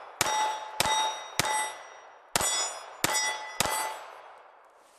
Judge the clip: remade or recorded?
recorded